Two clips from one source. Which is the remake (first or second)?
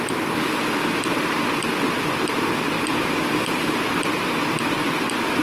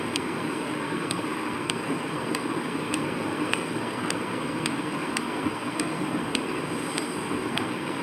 second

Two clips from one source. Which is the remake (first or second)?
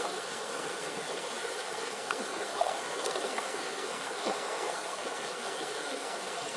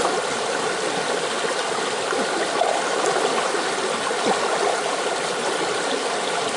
first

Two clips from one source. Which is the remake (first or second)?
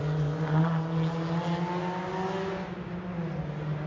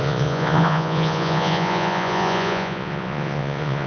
second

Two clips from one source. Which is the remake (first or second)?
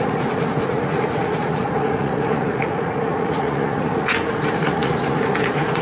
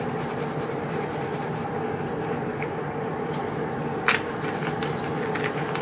first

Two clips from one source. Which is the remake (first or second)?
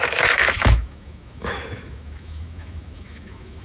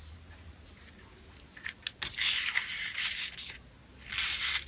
first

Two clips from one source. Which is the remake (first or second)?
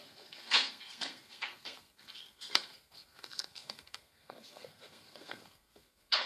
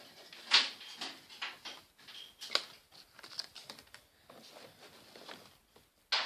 first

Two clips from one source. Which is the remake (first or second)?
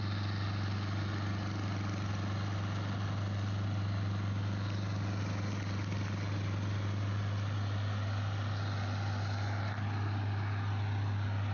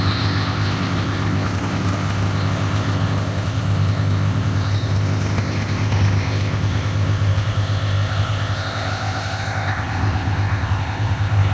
second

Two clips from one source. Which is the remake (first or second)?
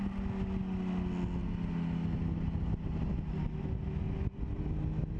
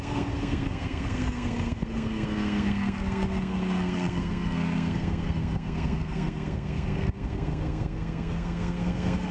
second